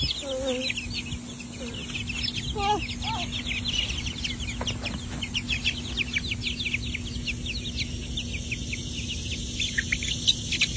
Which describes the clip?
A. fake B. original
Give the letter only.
B